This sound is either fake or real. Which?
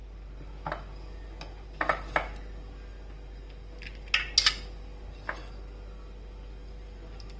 real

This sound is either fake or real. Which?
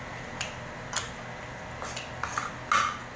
real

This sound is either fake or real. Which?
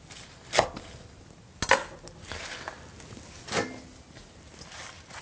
real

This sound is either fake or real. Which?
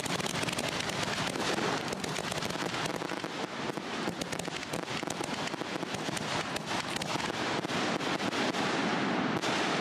real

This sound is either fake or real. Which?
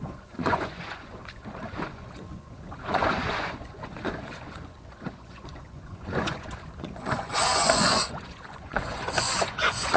fake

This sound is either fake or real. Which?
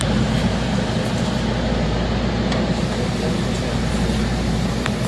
real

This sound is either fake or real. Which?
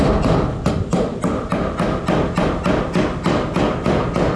real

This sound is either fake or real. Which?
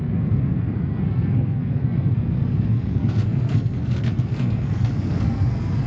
fake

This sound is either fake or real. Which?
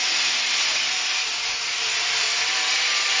real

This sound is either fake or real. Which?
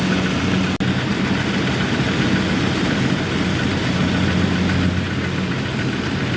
real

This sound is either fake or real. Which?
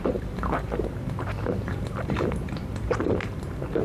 fake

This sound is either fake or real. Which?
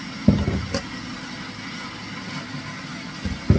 real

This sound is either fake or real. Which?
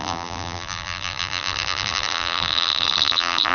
fake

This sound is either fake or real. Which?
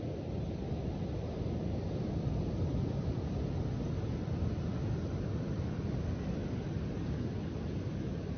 real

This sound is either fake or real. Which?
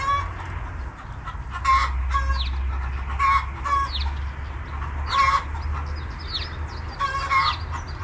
real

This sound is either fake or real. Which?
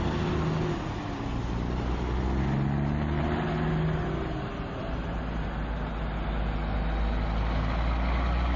real